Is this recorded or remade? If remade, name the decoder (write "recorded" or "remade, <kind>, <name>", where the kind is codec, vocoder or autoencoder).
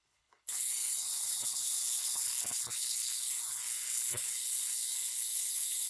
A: remade, codec, HILCodec